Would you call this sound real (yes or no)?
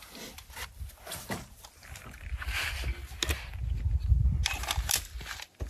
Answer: yes